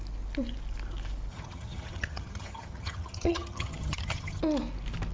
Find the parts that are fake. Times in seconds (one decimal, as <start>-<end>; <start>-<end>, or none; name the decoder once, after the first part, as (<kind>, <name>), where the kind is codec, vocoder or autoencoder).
1.3-4.4 (vocoder, HiFi-GAN)